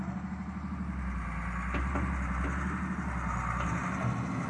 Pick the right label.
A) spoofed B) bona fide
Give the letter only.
B